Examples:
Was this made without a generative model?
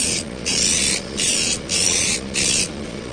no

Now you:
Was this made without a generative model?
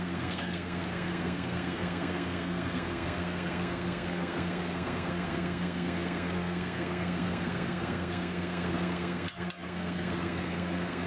no